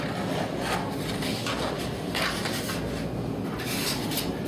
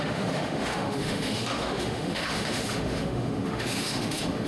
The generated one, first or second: second